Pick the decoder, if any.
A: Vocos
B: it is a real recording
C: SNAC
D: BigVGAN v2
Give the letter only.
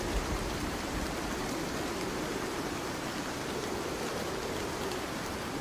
D